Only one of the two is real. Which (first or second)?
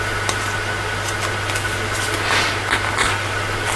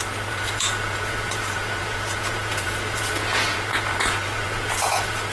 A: first